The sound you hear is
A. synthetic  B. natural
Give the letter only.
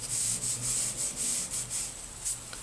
B